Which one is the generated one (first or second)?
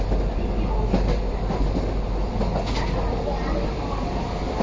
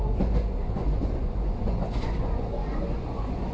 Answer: second